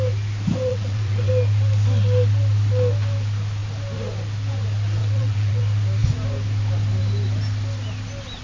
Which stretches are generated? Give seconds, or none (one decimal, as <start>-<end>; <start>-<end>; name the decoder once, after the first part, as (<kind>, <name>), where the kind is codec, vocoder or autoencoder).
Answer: 0.7-1.3 (vocoder, WaveNeXt); 5.0-5.6